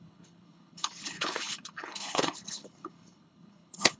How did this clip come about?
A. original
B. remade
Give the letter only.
B